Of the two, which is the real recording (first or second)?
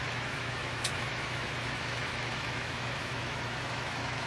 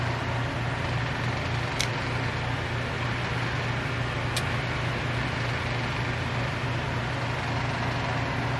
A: second